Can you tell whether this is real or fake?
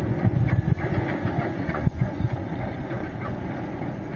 fake